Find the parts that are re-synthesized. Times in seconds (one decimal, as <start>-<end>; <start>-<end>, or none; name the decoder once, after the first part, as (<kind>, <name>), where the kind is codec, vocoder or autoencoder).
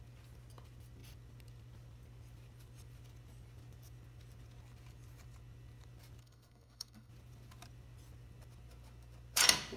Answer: 6.2-7.1 (codec, SNAC)